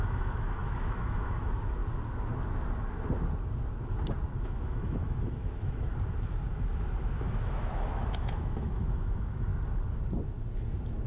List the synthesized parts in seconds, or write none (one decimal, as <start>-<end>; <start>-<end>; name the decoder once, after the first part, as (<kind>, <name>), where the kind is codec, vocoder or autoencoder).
0.0-1.8 (autoencoder, DAC-VAE); 4.4-5.9; 7.0-9.5